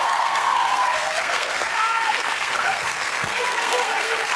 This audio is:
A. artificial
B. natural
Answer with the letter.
A